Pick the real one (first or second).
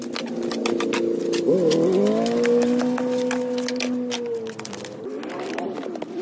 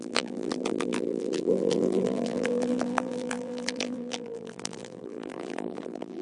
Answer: first